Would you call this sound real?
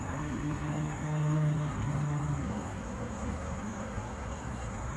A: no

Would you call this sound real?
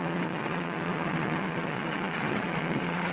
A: no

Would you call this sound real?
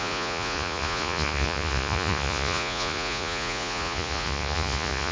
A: no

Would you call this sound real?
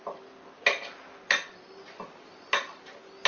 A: yes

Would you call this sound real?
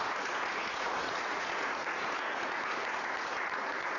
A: no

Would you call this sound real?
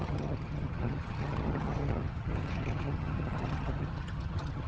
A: no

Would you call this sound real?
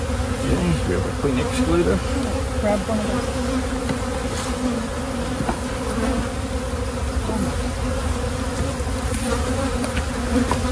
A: yes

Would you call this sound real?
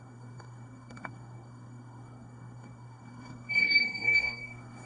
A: no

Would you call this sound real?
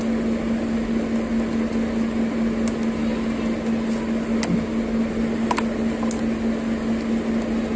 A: yes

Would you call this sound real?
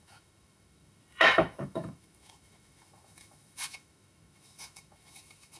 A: no